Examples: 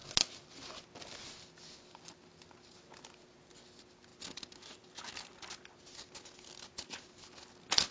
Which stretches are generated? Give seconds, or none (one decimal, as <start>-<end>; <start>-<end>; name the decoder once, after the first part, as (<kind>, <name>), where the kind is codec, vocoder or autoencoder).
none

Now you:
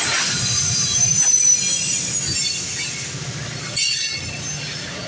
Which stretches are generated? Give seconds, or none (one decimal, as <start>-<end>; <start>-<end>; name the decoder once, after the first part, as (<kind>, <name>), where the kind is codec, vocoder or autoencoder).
none

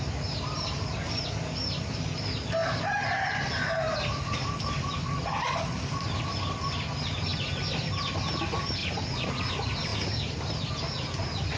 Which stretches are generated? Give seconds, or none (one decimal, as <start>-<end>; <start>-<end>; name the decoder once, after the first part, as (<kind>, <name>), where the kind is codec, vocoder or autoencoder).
8.8-9.5 (vocoder, Vocos)

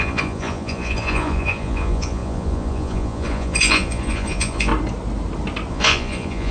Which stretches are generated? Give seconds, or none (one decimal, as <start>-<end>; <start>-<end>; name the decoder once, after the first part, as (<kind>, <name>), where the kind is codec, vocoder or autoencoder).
0.0-4.7 (vocoder, Vocos); 5.7-6.5

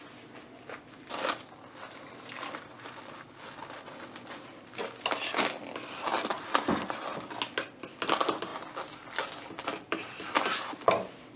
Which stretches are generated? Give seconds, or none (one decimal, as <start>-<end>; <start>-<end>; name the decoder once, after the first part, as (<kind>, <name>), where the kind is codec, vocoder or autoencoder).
none